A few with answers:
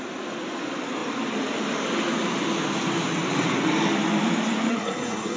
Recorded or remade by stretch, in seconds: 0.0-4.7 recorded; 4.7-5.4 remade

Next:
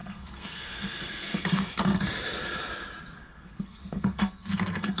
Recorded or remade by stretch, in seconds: 0.0-2.0 remade; 2.0-3.2 recorded; 3.2-5.0 remade

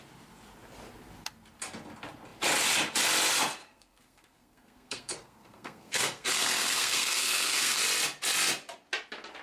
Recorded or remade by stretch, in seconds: 0.0-3.6 recorded; 3.6-7.8 remade; 7.8-9.4 recorded

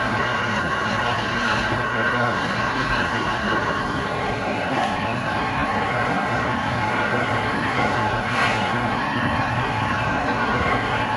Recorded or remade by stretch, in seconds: 0.0-11.2 remade

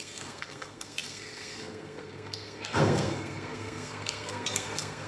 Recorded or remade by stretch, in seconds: 0.0-5.1 remade

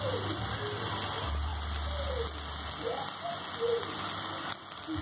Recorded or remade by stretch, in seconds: 0.0-5.0 recorded

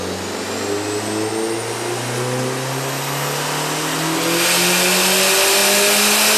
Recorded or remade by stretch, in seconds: 0.0-6.4 recorded